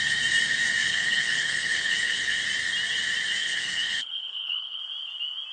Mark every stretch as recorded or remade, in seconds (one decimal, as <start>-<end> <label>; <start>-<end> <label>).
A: 0.0-0.8 recorded; 0.8-2.4 remade; 2.4-3.4 recorded; 3.4-4.8 remade; 4.8-5.5 recorded